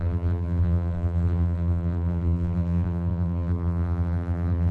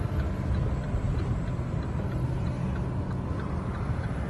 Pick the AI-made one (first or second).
first